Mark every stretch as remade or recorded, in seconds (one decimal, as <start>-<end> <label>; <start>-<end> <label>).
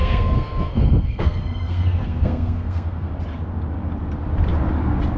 0.0-3.1 remade; 3.1-5.2 recorded